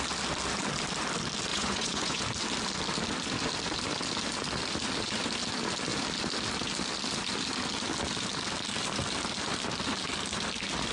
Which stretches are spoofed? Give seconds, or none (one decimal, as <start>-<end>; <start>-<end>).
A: 1.5-2.2